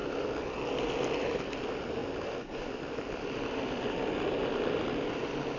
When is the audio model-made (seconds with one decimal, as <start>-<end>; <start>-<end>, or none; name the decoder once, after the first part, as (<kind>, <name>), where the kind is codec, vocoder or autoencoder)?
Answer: none